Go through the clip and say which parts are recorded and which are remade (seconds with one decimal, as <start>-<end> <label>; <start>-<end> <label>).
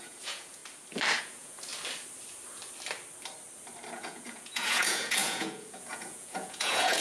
0.0-0.6 remade; 0.6-1.2 recorded; 1.2-1.7 remade; 1.7-3.9 recorded; 3.9-7.0 remade